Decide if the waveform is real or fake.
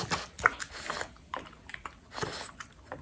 real